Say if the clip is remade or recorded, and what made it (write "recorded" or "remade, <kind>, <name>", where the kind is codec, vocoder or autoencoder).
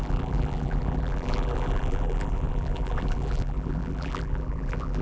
remade, vocoder, BigVGAN v2